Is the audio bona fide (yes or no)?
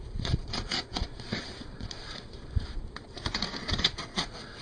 no